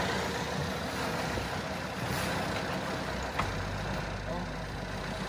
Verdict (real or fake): real